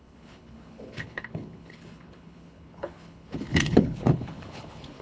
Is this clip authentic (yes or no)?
no